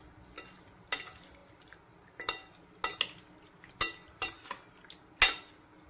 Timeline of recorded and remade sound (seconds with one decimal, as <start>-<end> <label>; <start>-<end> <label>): 0.0-5.9 recorded